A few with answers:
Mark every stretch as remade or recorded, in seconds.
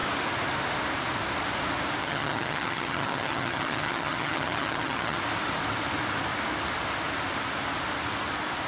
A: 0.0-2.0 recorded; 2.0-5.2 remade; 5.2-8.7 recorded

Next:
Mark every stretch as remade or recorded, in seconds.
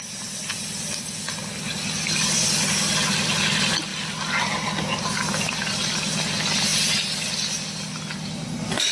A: 0.0-8.9 recorded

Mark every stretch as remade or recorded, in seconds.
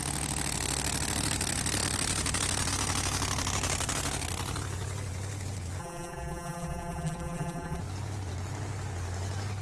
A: 0.0-5.8 recorded; 5.8-7.8 remade; 7.8-9.6 recorded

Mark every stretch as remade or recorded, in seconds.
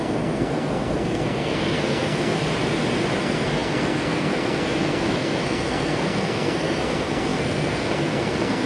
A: 0.0-2.4 remade; 2.4-3.2 recorded; 3.2-8.7 remade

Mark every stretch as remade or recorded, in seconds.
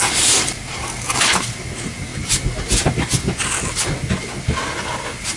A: 0.0-5.4 recorded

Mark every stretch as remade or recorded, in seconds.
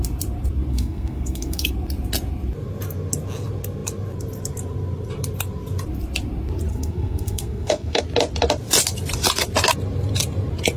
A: 0.0-0.7 recorded; 0.7-1.7 remade; 1.7-6.7 recorded; 6.7-8.0 remade; 8.0-10.8 recorded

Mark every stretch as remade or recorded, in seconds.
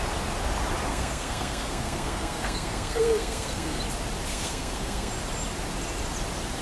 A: 0.0-0.9 recorded; 0.9-3.8 remade; 3.8-4.3 recorded; 4.3-5.1 remade; 5.1-6.6 recorded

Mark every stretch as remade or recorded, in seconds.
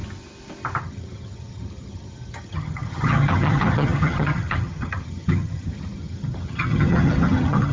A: 0.0-0.8 recorded; 0.8-7.7 remade